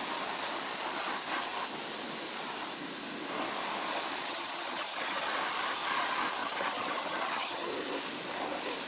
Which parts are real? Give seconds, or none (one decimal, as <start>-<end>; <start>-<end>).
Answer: 0.0-4.2; 5.2-6.4; 7.7-8.9